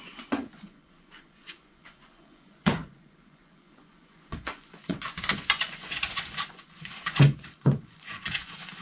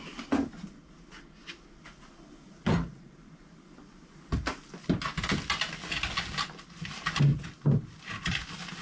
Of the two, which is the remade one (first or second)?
first